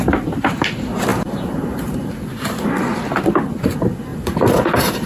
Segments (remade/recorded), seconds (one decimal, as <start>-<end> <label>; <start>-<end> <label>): 0.0-1.1 recorded; 1.1-2.5 remade; 2.5-4.1 recorded; 4.1-5.1 remade